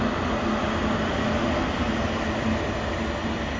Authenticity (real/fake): real